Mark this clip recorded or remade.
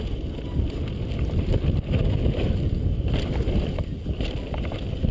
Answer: recorded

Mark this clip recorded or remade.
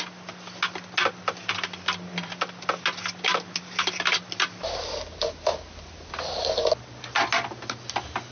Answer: recorded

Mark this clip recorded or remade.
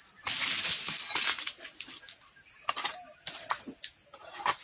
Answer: recorded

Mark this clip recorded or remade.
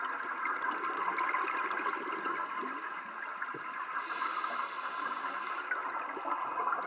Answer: recorded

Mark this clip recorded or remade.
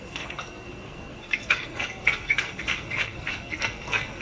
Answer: remade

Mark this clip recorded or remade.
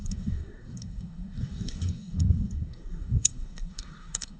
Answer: remade